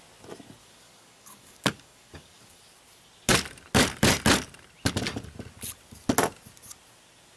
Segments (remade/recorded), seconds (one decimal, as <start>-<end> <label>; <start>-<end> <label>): 0.0-0.6 recorded; 0.6-2.6 remade; 2.6-7.4 recorded